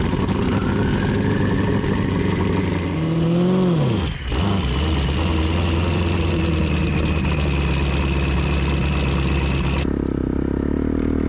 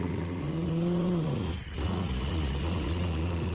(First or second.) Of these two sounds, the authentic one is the first